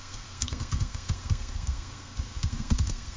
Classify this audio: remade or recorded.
remade